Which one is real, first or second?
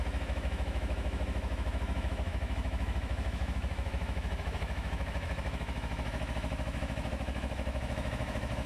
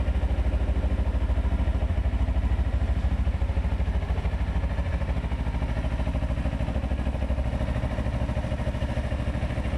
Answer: second